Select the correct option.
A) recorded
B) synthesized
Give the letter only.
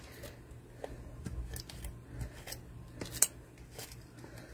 A